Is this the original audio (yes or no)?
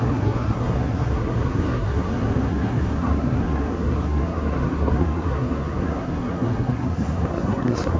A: no